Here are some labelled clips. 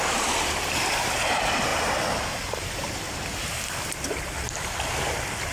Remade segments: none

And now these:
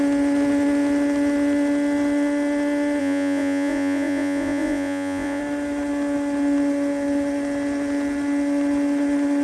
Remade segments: 3.0-5.4 (vocoder, Vocos)

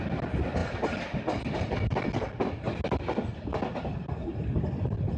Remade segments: none

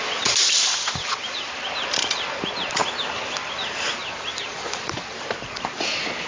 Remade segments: 0.0-6.3 (vocoder, BigVGAN v2)